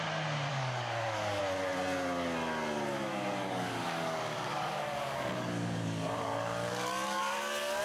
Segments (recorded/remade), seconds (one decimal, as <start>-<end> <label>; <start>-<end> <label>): 0.0-0.5 recorded; 0.5-1.4 remade; 1.4-3.1 recorded; 3.1-7.8 remade